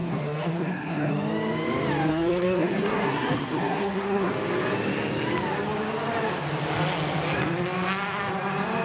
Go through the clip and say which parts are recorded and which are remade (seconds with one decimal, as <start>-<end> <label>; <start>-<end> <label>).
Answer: 0.0-1.1 remade; 1.1-2.1 recorded; 2.1-4.3 remade; 4.3-8.8 recorded